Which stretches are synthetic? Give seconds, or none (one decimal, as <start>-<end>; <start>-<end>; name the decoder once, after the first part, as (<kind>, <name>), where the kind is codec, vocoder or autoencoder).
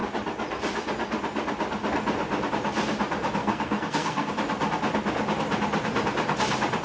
3.4-4.3 (codec, SNAC)